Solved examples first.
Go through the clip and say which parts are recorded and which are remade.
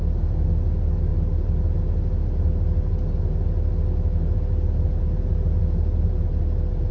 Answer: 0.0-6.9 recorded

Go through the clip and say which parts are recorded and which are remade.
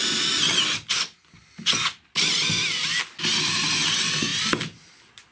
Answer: 0.0-5.3 recorded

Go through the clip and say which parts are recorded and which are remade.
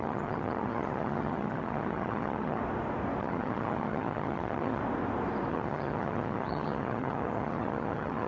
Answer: 0.0-2.6 remade; 2.6-3.2 recorded; 3.2-4.8 remade; 4.8-5.5 recorded; 5.5-8.3 remade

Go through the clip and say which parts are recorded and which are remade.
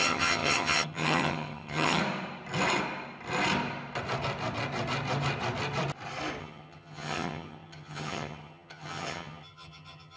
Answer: 0.0-2.0 remade; 2.0-6.4 recorded; 6.4-10.2 remade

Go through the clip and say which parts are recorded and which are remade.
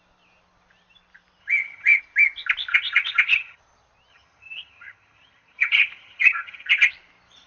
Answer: 0.0-1.4 recorded; 1.4-2.0 remade; 2.0-2.7 recorded; 2.7-3.6 remade; 3.6-4.1 recorded; 4.1-6.9 remade; 6.9-7.5 recorded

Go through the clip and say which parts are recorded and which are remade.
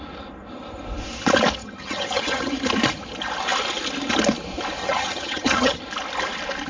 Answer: 0.0-1.6 recorded; 1.6-2.5 remade; 2.5-4.8 recorded; 4.8-5.8 remade; 5.8-6.7 recorded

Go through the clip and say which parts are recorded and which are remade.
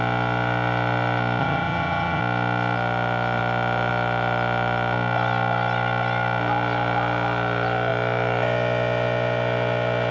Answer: 0.0-1.4 recorded; 1.4-2.2 remade; 2.2-10.1 recorded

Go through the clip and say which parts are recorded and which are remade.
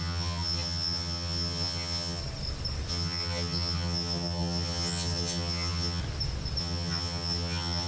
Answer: 0.0-2.2 remade; 2.2-2.9 recorded; 2.9-6.0 remade; 6.0-6.6 recorded; 6.6-7.9 remade